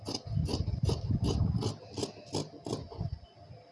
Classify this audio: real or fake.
real